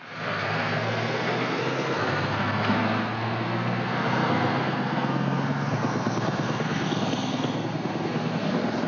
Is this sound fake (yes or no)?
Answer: yes